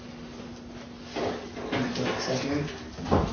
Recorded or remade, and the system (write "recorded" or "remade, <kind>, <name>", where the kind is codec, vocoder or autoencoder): recorded